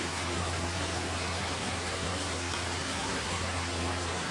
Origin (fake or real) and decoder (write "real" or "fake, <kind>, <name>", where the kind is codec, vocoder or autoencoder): fake, codec, SNAC